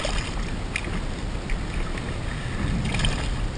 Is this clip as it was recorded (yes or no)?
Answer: yes